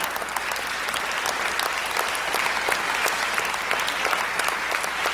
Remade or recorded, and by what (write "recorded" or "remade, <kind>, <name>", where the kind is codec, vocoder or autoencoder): recorded